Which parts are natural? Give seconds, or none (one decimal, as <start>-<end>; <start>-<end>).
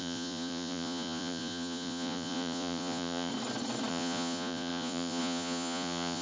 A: 3.3-3.9